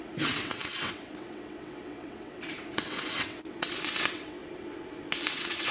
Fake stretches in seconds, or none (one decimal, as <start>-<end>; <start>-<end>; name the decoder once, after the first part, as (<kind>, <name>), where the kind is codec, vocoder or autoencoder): 0.0-4.4 (vocoder, WaveNeXt); 5.3-5.7